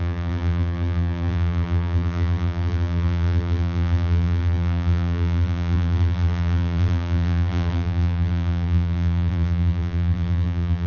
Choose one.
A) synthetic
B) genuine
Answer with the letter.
A